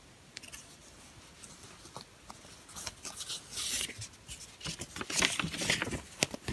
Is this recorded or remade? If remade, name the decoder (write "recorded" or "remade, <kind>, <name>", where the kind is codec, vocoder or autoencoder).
recorded